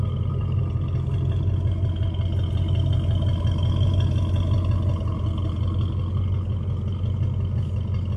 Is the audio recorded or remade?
recorded